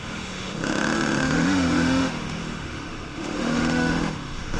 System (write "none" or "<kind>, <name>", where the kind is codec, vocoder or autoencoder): autoencoder, DAC-VAE